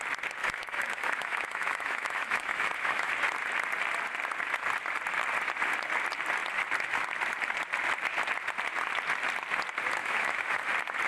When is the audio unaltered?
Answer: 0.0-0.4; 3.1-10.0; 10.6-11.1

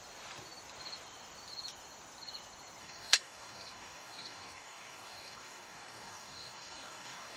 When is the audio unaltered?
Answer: 0.0-2.8

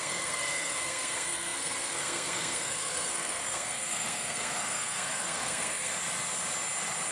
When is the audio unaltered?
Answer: 5.9-7.1

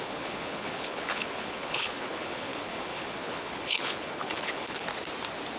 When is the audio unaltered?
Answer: 4.9-5.6

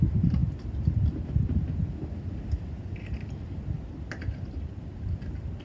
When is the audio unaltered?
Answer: 0.0-5.6

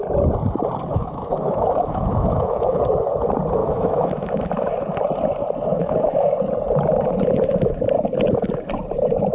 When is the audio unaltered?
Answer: 0.0-0.9; 2.8-3.6; 4.5-5.7; 6.3-9.3

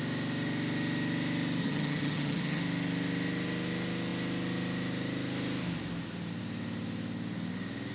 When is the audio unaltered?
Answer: 0.0-1.6; 2.6-7.9

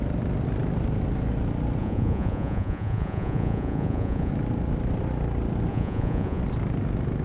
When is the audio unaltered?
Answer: 0.0-1.8; 4.3-5.7; 6.4-7.2